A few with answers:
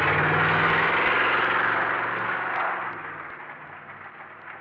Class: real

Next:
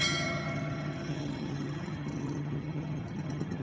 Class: fake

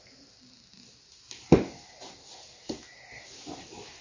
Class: real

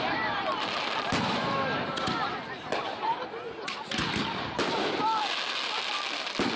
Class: real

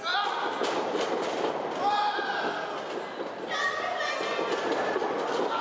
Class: real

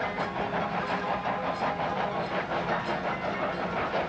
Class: real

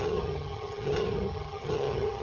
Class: fake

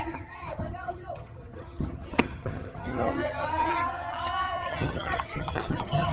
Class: fake